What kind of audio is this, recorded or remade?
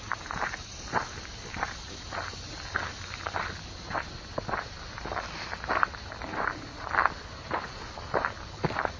recorded